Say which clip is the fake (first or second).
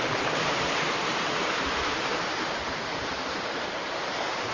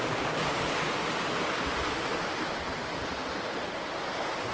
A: first